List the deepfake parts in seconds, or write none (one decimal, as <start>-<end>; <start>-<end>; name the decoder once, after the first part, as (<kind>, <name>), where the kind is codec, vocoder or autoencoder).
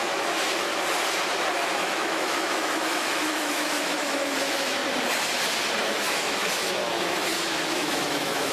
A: 0.0-0.7 (autoencoder, DAC-VAE); 1.5-4.8; 5.8-8.5